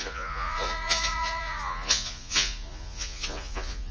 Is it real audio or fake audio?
fake